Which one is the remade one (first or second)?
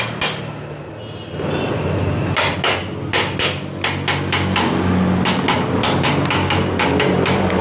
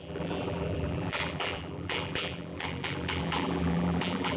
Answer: second